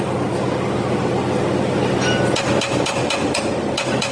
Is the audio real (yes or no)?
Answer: yes